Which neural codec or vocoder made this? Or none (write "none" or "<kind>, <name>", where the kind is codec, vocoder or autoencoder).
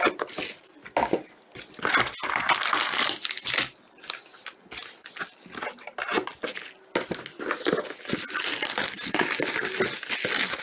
none